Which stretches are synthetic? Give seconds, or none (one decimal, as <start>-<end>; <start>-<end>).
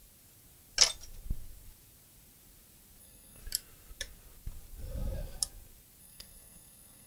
3.0-3.4; 6.0-7.1